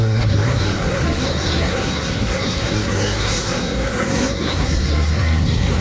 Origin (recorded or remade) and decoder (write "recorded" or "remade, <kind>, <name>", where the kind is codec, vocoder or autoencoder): remade, codec, SNAC